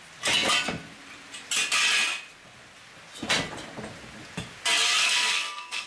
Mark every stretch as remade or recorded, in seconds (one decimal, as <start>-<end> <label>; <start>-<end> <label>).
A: 0.0-5.0 recorded; 5.0-5.9 remade